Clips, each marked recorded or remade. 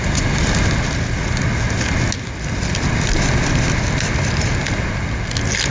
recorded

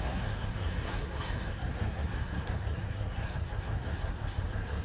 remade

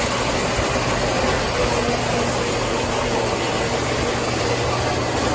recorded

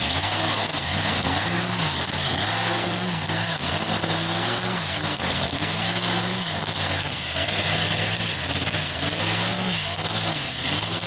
remade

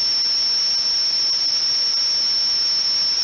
recorded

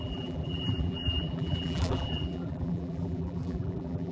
remade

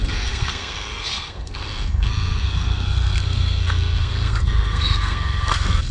remade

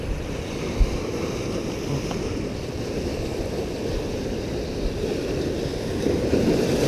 remade